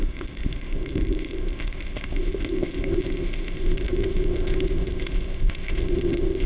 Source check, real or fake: fake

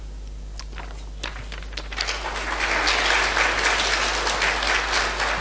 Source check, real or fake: real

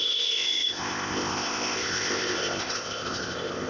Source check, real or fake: fake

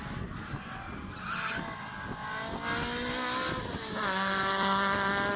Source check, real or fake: real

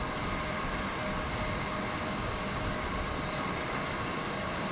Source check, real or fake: real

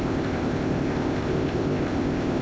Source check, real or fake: fake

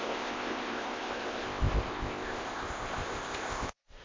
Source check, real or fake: fake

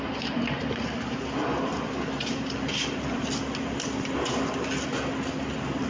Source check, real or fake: real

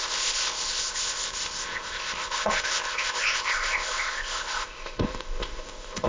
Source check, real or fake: fake